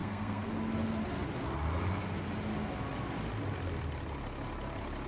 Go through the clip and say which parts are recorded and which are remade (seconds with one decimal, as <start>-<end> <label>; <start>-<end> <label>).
0.0-0.5 remade; 0.5-5.1 recorded